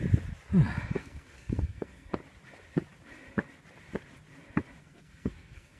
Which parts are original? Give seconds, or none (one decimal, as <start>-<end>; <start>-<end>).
0.0-1.0; 2.1-4.8